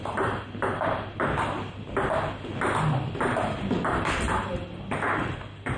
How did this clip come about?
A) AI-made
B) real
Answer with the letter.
B